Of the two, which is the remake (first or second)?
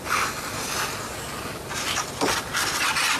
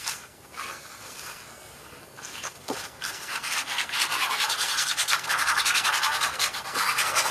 second